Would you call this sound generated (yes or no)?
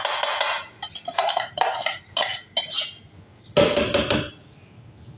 no